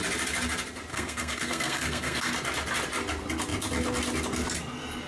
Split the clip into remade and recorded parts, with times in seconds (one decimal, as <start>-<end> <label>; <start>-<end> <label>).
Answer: 0.0-0.9 recorded; 0.9-2.3 remade; 2.3-5.1 recorded